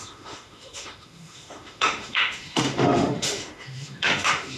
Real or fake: fake